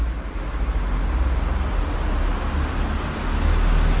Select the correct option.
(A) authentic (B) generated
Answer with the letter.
A